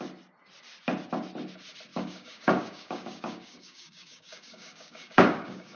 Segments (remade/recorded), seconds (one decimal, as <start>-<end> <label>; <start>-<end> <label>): 0.0-1.9 recorded; 1.9-5.8 remade